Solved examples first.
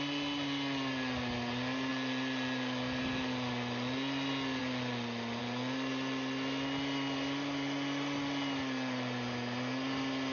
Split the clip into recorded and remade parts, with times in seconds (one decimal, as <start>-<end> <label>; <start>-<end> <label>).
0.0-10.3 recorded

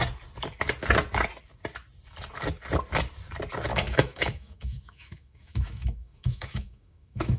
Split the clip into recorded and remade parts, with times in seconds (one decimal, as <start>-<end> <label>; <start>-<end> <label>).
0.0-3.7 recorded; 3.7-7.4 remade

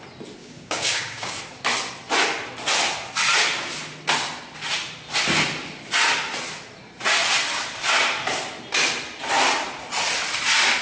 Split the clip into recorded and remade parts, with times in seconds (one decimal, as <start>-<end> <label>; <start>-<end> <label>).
0.0-0.4 recorded; 0.4-1.4 remade; 1.4-10.8 recorded

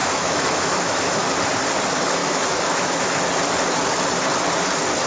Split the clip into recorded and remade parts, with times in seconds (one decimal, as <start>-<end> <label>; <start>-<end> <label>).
0.0-1.3 remade; 1.3-2.2 recorded; 2.2-3.2 remade; 3.2-5.1 recorded

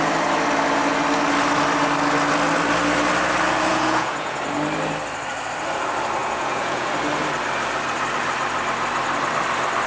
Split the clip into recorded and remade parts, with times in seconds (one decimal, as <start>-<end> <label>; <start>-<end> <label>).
0.0-3.7 recorded; 3.7-4.4 remade; 4.4-6.2 recorded; 6.2-6.9 remade; 6.9-9.9 recorded

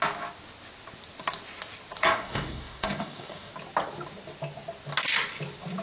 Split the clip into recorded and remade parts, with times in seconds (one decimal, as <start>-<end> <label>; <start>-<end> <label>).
0.0-2.0 recorded; 2.0-3.5 remade; 3.5-5.8 recorded

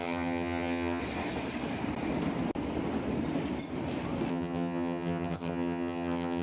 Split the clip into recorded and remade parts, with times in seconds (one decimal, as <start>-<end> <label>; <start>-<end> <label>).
0.0-1.0 remade; 1.0-4.3 recorded; 4.3-6.4 remade